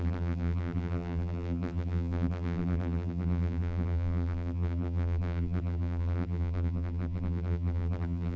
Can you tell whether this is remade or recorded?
remade